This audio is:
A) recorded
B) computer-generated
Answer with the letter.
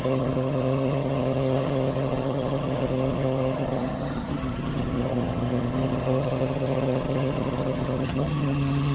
B